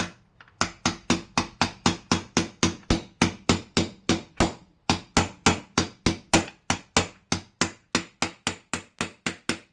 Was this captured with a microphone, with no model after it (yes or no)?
yes